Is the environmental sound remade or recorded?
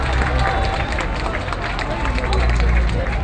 recorded